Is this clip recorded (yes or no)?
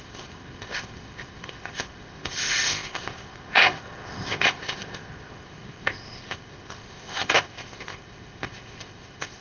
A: no